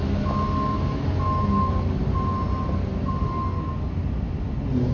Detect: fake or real real